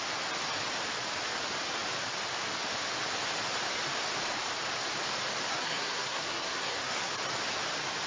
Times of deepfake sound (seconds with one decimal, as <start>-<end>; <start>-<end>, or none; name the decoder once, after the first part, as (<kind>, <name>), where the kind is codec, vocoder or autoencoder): 5.5-7.1 (codec, SNAC)